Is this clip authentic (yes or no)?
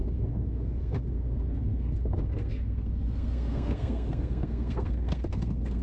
no